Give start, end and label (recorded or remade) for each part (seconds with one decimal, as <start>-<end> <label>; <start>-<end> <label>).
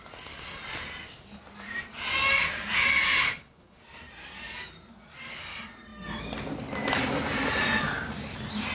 0.0-3.2 recorded; 3.2-3.8 remade; 3.8-8.7 recorded